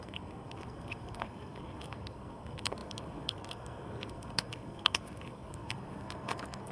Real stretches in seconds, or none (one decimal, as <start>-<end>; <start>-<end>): none

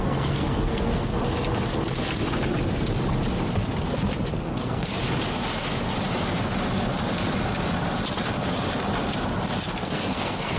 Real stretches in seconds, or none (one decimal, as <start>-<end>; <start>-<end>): 1.1-4.3; 4.9-9.8